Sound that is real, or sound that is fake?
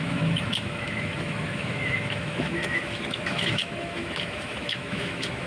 fake